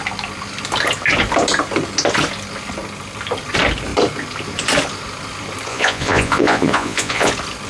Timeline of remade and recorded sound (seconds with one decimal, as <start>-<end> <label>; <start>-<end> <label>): 0.0-5.7 recorded; 5.7-7.3 remade; 7.3-7.7 recorded